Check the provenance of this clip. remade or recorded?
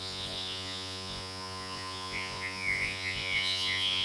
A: remade